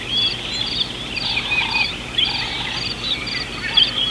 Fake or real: real